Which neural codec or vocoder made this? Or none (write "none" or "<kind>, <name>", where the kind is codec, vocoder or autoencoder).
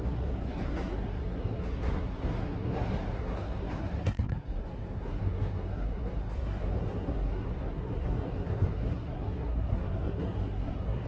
codec, SNAC